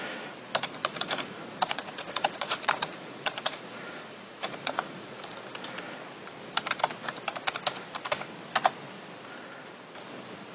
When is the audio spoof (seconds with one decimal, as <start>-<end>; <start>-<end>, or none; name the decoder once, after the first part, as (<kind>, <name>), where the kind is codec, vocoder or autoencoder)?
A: 0.8-5.4 (vocoder, Vocos)